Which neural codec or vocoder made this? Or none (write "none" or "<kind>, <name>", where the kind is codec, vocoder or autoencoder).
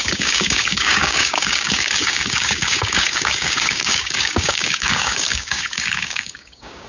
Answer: codec, DAC